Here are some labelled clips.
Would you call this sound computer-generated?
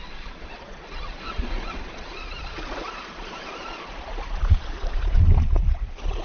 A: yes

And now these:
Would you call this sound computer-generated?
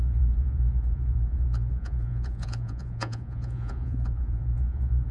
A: yes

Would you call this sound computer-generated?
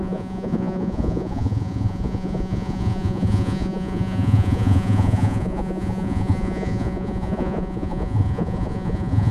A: yes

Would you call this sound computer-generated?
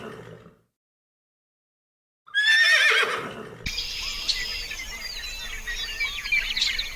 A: no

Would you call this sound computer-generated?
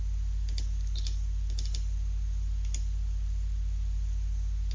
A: no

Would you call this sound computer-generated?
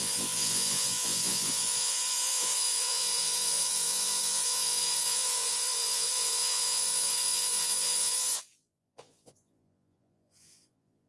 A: yes